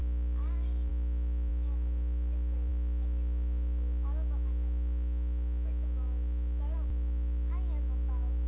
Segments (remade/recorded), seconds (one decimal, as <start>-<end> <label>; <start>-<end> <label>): 0.0-1.5 recorded; 1.5-2.7 remade; 2.7-8.5 recorded